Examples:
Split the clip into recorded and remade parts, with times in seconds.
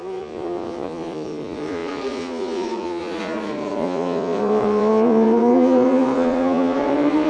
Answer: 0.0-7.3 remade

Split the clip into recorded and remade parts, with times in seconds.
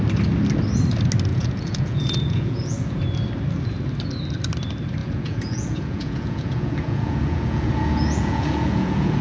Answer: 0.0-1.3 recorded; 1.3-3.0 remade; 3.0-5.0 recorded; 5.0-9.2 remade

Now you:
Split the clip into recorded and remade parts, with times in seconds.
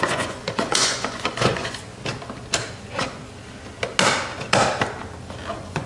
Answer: 0.0-1.9 remade; 1.9-2.7 recorded; 2.7-3.2 remade; 3.2-5.5 recorded; 5.5-5.9 remade